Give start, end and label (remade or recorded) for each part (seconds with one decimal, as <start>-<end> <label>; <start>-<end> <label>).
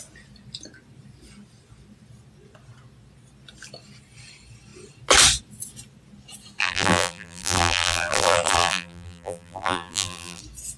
0.0-6.6 recorded; 6.6-10.4 remade; 10.4-10.8 recorded